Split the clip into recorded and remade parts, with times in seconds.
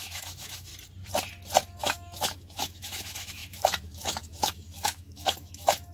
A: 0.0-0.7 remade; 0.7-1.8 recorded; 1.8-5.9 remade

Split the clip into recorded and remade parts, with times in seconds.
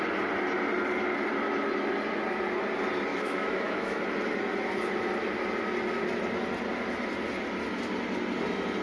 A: 0.0-3.1 recorded; 3.1-4.0 remade; 4.0-8.8 recorded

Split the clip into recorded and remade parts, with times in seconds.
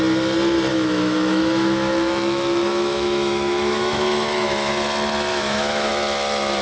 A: 0.0-0.7 recorded; 0.7-4.7 remade; 4.7-5.3 recorded; 5.3-5.9 remade; 5.9-6.6 recorded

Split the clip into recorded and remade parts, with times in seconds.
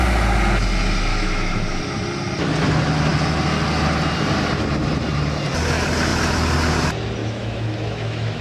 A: 0.0-1.1 recorded; 1.1-1.8 remade; 1.8-7.2 recorded; 7.2-8.4 remade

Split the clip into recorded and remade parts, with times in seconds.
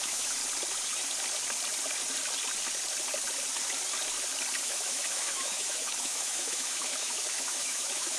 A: 0.0-0.4 remade; 0.4-4.6 recorded; 4.6-8.2 remade